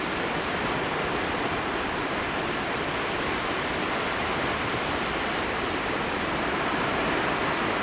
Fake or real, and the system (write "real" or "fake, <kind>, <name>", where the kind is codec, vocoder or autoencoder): fake, vocoder, BigVGAN v2